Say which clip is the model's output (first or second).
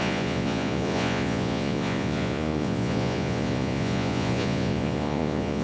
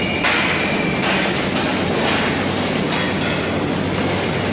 first